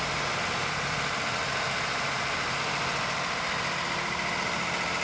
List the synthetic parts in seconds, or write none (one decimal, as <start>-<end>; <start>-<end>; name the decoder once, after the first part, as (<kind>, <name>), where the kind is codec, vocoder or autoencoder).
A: 0.6-3.6 (vocoder, BigVGAN v2)